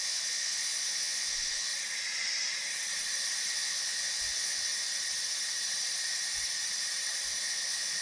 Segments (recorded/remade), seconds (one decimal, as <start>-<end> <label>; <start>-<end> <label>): 0.0-1.7 remade; 1.7-3.5 recorded; 3.5-4.7 remade; 4.7-7.4 recorded; 7.4-8.0 remade